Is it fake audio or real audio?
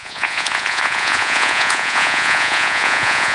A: fake